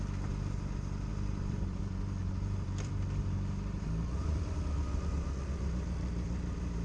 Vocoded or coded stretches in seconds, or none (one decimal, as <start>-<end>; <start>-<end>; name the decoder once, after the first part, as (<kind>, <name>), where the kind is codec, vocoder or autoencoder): 1.1-1.8 (vocoder, BigVGAN v2); 2.2-4.8